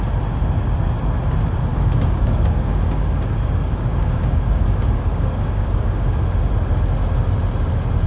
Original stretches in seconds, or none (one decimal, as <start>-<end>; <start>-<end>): 0.0-1.7; 6.5-8.1